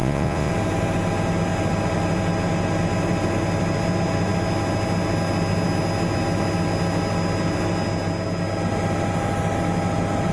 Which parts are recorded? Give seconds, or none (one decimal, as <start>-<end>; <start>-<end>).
0.5-10.3